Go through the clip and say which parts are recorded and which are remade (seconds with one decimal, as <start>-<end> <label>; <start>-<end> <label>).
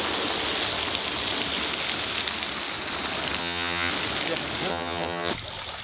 0.0-3.4 recorded; 3.4-3.9 remade; 3.9-4.7 recorded; 4.7-5.3 remade; 5.3-5.8 recorded